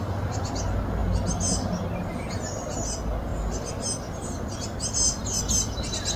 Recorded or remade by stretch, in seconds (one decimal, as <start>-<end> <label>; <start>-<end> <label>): 0.0-6.2 recorded

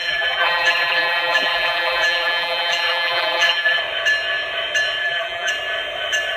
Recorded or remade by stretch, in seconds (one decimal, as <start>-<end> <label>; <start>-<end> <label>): 0.0-3.8 remade; 3.8-5.0 recorded; 5.0-5.5 remade; 5.5-6.4 recorded